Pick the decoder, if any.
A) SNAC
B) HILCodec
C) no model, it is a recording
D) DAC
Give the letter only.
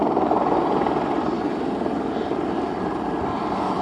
C